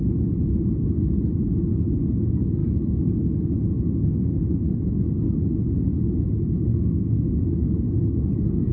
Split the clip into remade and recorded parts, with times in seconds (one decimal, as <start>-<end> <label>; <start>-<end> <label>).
0.0-6.7 recorded; 6.7-7.3 remade; 7.3-8.7 recorded